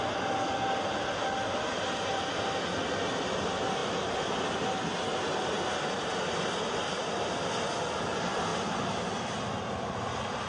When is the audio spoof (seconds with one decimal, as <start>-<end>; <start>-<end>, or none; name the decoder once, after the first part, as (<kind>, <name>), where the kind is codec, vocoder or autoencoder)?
3.8-4.6 (vocoder, BigVGAN v2)